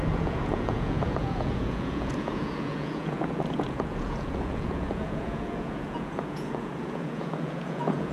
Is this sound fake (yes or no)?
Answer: yes